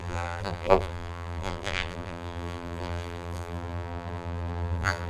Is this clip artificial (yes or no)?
yes